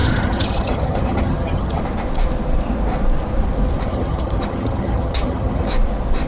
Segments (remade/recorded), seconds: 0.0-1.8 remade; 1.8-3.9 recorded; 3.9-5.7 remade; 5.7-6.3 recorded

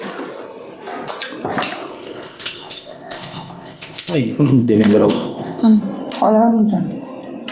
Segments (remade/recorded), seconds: 0.0-1.9 recorded; 1.9-5.8 remade; 5.8-7.5 recorded

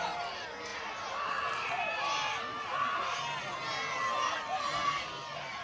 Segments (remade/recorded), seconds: 0.0-0.7 recorded; 0.7-1.7 remade; 1.7-2.7 recorded; 2.7-3.2 remade; 3.2-5.6 recorded

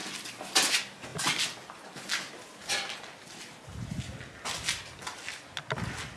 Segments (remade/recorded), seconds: 0.0-6.2 recorded

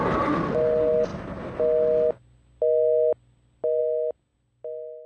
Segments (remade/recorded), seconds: 0.0-5.1 recorded

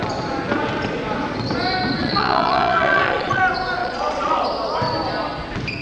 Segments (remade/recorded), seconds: 0.0-2.0 recorded; 2.0-3.4 remade; 3.4-3.8 recorded; 3.8-4.4 remade; 4.4-5.8 recorded